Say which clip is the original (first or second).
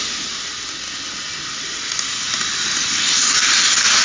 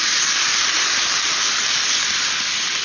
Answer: first